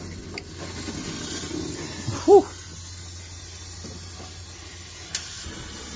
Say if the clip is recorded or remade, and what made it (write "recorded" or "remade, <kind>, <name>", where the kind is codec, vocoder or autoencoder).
recorded